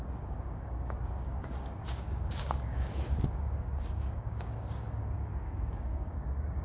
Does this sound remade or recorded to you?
remade